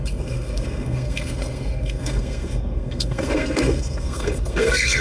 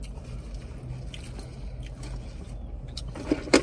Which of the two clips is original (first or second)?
second